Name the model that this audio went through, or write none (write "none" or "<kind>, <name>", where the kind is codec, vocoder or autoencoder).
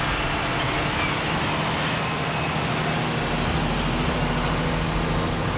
none